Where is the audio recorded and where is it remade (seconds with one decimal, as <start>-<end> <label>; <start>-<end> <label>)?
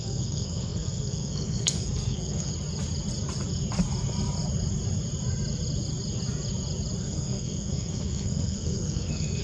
0.0-2.5 remade; 2.5-7.0 recorded; 7.0-9.4 remade